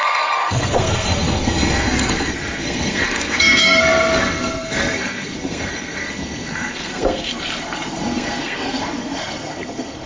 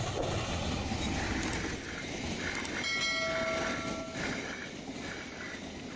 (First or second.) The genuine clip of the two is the second